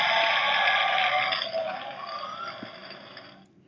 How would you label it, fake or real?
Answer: real